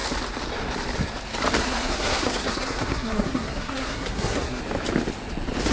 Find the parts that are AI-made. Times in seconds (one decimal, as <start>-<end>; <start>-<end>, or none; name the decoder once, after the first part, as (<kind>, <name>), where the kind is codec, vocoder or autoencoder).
1.6-4.6 (codec, SNAC)